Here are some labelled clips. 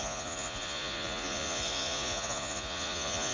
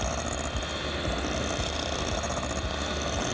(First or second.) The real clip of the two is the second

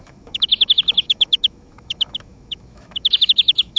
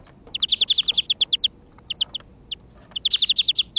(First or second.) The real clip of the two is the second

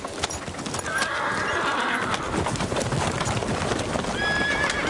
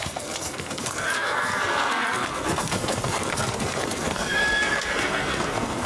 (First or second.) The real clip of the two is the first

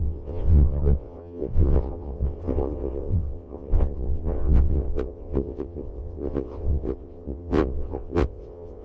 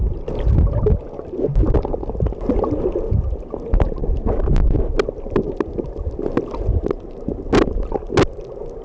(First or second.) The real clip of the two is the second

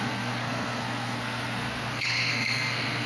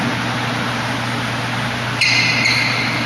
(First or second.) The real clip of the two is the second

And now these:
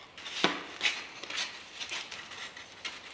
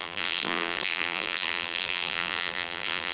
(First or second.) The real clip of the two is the first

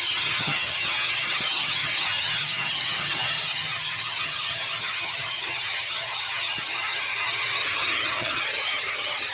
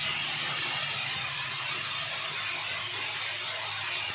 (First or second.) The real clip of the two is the second